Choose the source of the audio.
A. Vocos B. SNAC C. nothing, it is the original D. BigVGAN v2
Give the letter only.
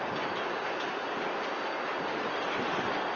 C